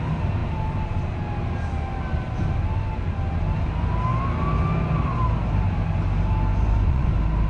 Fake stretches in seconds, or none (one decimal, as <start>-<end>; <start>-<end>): 6.5-7.1